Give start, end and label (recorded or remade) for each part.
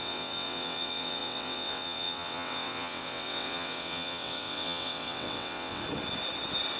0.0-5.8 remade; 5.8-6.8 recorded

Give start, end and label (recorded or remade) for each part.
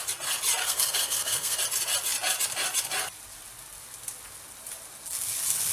0.0-0.6 recorded; 0.6-1.6 remade; 1.6-5.7 recorded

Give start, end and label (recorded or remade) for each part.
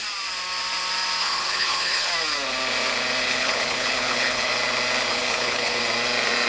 0.0-1.2 recorded; 1.2-2.1 remade; 2.1-3.2 recorded; 3.2-4.5 remade; 4.5-5.1 recorded; 5.1-5.8 remade; 5.8-6.5 recorded